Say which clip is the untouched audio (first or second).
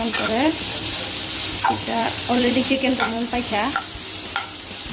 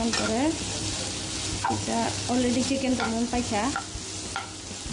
second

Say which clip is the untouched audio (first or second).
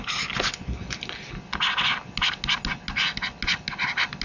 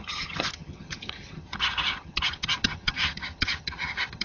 first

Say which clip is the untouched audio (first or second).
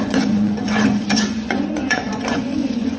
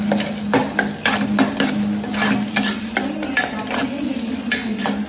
second